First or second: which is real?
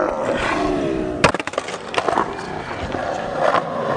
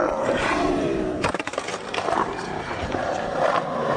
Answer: first